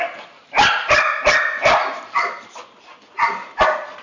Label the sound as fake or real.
real